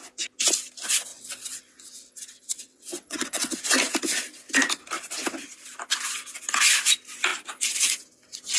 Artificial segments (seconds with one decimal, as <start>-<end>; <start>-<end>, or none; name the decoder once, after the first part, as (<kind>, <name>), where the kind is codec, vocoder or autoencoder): 1.1-3.5 (vocoder, WaveNeXt)